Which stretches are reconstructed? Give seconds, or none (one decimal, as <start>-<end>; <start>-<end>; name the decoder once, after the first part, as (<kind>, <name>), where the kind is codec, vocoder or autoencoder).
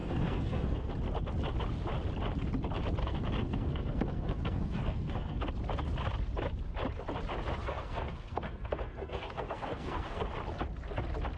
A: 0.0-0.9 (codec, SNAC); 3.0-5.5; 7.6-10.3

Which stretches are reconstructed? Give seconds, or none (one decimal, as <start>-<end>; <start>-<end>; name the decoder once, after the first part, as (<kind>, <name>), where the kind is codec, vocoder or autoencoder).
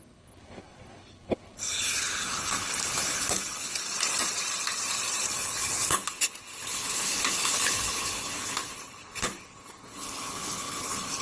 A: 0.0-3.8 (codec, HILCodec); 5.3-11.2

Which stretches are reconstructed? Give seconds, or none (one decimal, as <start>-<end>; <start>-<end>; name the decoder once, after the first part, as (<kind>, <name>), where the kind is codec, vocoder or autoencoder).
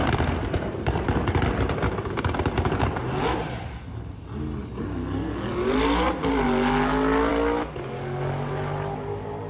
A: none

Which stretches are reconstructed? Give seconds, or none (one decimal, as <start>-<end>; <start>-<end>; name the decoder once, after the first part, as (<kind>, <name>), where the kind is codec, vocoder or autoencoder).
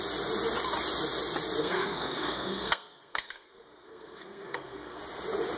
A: 1.6-5.0 (codec, SNAC)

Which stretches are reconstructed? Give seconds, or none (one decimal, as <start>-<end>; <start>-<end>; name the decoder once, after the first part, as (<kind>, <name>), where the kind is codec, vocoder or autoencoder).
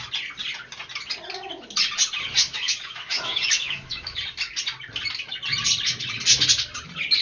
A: 2.4-4.2 (autoencoder, DAC-VAE)